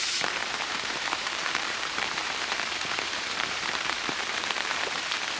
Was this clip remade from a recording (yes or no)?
yes